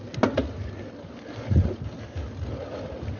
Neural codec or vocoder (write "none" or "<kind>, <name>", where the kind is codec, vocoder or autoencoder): none